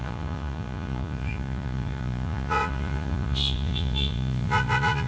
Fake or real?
fake